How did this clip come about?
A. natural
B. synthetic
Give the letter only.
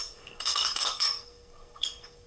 B